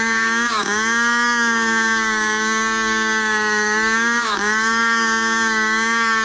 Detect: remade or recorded remade